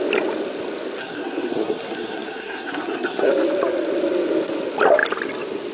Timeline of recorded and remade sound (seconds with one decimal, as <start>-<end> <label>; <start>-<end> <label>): 0.0-1.0 recorded; 1.0-3.3 remade; 3.3-5.7 recorded